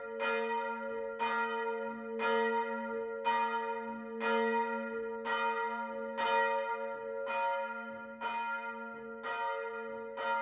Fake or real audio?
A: real